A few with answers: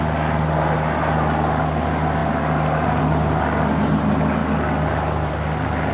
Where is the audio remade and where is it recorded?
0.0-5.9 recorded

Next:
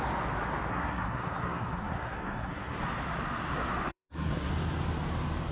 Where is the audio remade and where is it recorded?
0.0-0.7 recorded; 0.7-2.8 remade; 2.8-3.9 recorded; 3.9-4.5 remade; 4.5-5.5 recorded

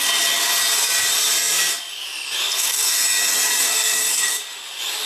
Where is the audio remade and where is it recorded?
0.0-2.5 recorded; 2.5-3.0 remade; 3.0-3.6 recorded; 3.6-4.4 remade; 4.4-5.1 recorded

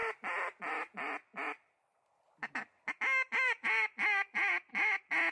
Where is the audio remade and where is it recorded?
0.0-5.3 recorded

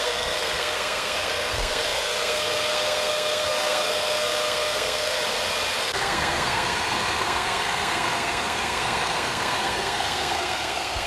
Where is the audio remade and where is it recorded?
0.0-5.2 remade; 5.2-5.8 recorded; 5.8-11.1 remade

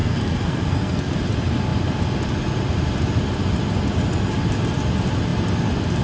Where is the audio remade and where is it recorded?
0.0-1.1 remade; 1.1-6.0 recorded